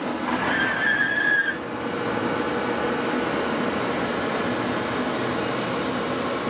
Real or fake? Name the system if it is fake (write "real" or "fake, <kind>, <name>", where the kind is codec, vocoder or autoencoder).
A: real